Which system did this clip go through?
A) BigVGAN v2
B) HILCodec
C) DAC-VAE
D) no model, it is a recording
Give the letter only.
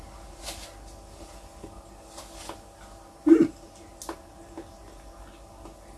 D